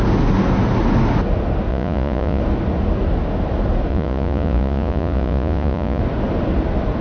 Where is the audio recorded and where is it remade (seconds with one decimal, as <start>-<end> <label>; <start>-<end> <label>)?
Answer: 0.0-1.7 recorded; 1.7-2.4 remade; 2.4-3.9 recorded; 3.9-6.0 remade; 6.0-7.0 recorded